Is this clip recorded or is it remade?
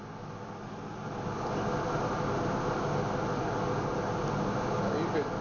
recorded